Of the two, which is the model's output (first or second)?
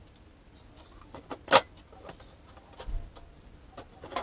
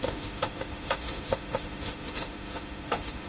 second